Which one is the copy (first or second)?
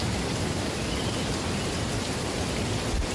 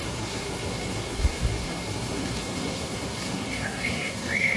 second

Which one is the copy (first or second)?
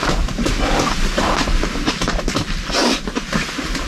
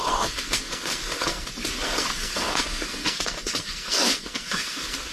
second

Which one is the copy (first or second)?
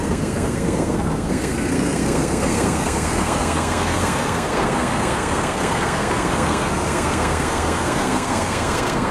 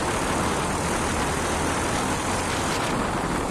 first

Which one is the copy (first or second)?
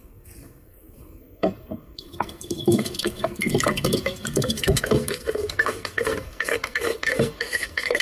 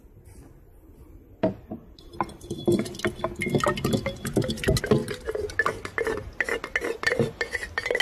first